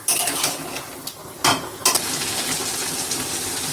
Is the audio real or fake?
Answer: real